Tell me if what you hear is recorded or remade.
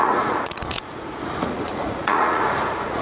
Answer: remade